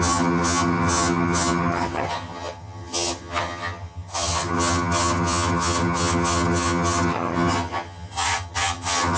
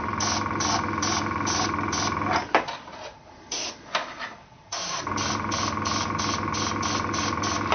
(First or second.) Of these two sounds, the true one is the second